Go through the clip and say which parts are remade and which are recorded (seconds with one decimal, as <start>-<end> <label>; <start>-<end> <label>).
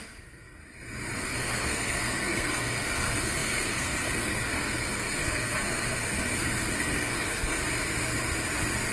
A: 0.0-0.6 remade; 0.6-1.2 recorded; 1.2-7.6 remade; 7.6-8.9 recorded